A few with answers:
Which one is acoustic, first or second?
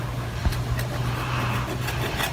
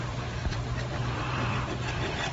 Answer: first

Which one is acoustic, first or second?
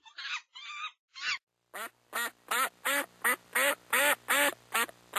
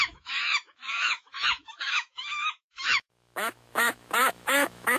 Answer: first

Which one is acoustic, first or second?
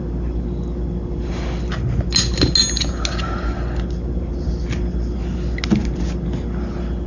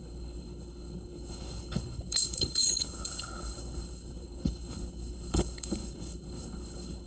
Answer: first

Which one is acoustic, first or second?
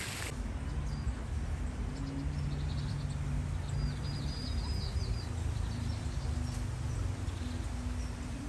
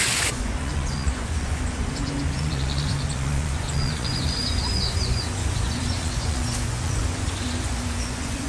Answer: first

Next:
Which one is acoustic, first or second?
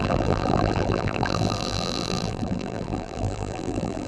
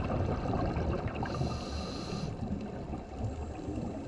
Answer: second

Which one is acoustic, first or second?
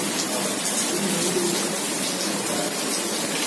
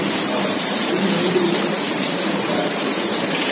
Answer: first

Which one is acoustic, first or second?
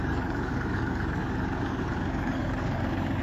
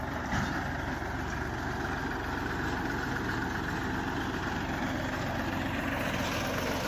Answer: second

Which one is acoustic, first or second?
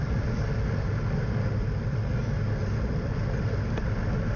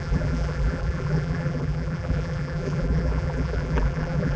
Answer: first